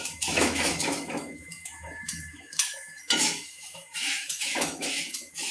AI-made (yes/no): yes